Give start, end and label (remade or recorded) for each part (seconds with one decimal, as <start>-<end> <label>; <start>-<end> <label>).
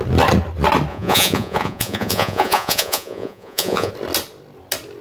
0.0-0.9 recorded; 0.9-3.9 remade; 3.9-5.0 recorded